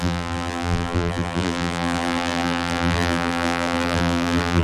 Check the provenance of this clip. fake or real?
fake